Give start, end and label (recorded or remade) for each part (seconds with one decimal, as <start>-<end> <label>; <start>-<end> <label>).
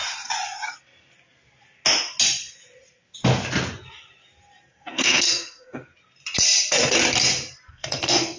0.0-4.7 recorded; 4.7-5.9 remade; 5.9-7.7 recorded; 7.7-8.4 remade